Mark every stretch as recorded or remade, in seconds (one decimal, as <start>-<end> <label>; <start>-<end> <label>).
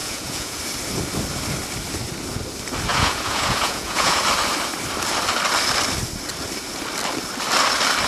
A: 0.0-0.6 remade; 0.6-2.9 recorded; 2.9-4.2 remade; 4.2-8.1 recorded